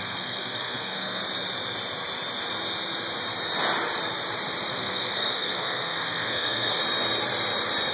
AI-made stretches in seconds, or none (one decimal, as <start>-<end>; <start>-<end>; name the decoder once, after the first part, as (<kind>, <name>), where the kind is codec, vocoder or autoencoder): 0.0-1.2 (codec, SNAC); 4.7-6.8